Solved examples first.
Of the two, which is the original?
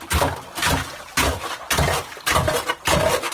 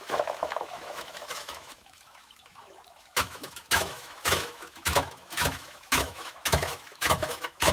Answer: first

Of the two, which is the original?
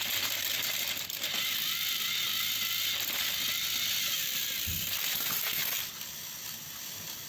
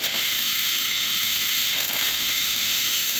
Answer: first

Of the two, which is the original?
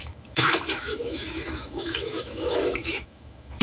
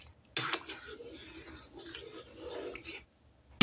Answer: second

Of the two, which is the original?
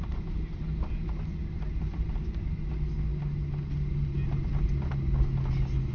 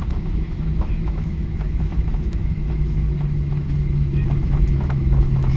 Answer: first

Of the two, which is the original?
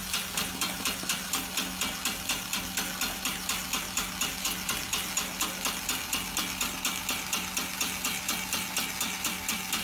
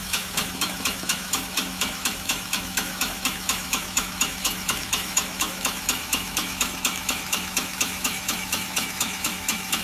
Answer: first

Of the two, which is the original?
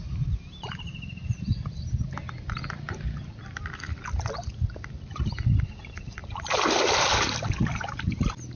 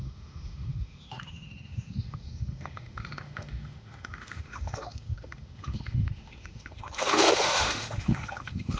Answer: first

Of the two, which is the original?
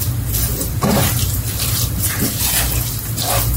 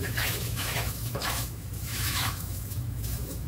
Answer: first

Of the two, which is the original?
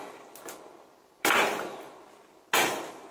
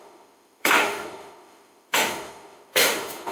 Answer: first